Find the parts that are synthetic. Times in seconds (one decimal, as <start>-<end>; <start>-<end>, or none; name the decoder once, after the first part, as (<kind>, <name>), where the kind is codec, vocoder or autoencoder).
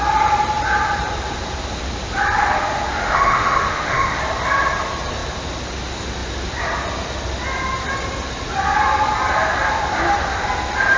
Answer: 2.9-4.2 (autoencoder, DAC-VAE)